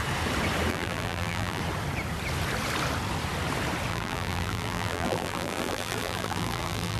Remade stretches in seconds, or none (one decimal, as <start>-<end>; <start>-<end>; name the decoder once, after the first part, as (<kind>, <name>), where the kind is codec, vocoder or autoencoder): 0.7-1.6 (vocoder, BigVGAN v2); 3.9-7.0